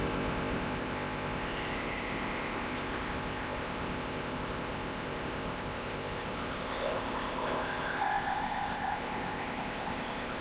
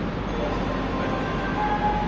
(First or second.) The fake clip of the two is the first